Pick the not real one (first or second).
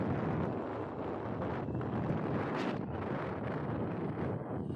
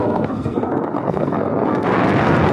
second